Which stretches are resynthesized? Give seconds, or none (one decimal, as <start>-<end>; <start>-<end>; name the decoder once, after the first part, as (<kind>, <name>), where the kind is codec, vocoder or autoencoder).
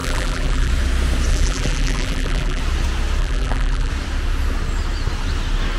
0.0-0.7 (vocoder, BigVGAN v2); 1.3-2.6; 3.2-3.9